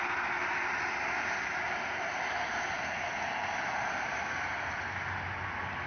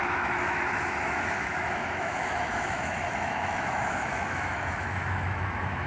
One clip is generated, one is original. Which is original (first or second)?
first